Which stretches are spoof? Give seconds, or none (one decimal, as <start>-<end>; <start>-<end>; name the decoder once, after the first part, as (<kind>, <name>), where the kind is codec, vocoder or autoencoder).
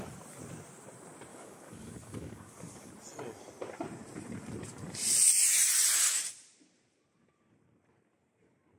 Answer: 1.3-2.9 (codec, DAC)